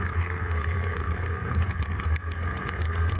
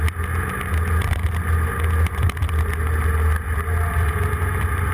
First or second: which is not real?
first